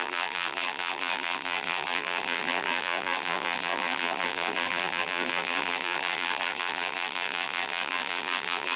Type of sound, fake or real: fake